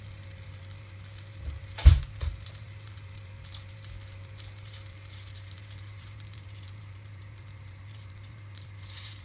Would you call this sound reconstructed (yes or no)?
yes